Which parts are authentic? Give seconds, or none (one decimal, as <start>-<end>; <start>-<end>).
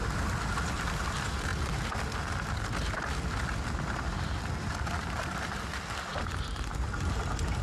0.0-6.1; 7.1-7.6